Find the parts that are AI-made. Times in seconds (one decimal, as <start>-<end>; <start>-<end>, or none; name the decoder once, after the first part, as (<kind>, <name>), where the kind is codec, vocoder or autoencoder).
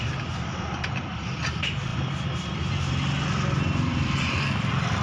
0.0-5.0 (vocoder, BigVGAN v2)